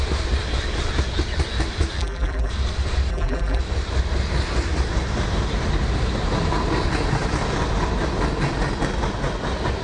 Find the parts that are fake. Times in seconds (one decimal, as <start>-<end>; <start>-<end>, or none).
2.0-2.5; 3.1-3.6